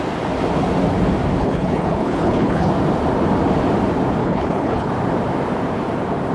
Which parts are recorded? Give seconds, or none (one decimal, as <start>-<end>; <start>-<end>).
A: 0.0-1.4; 2.7-4.2; 4.9-6.3